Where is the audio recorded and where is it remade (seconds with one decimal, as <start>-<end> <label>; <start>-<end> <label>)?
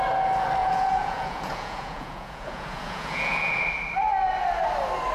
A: 0.0-0.6 recorded; 0.6-3.7 remade; 3.7-5.1 recorded